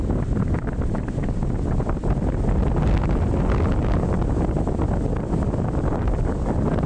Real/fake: real